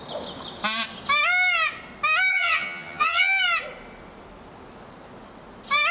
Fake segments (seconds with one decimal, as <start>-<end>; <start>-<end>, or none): 2.3-3.4